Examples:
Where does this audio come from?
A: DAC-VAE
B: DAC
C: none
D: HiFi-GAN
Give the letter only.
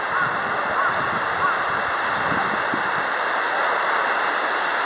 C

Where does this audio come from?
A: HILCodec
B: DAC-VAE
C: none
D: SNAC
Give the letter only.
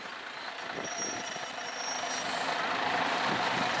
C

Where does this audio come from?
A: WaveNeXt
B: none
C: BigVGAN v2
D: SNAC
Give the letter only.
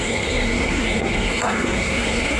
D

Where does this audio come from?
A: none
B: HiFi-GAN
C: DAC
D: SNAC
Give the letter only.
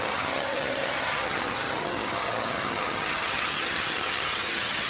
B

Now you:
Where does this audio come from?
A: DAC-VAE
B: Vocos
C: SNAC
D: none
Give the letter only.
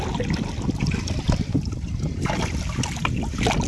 D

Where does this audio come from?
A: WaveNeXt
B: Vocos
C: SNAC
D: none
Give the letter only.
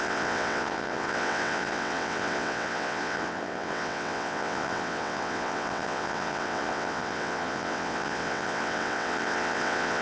A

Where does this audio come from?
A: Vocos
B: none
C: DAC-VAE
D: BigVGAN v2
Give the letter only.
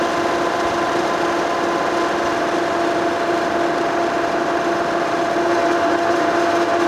B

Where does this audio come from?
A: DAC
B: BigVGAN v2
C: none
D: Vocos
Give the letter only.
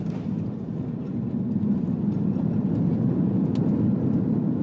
C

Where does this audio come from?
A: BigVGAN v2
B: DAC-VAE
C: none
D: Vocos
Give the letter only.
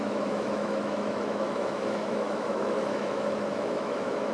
B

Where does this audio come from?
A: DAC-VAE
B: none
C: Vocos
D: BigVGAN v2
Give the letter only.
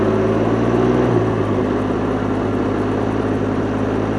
B